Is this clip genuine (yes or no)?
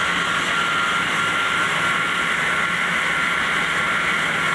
yes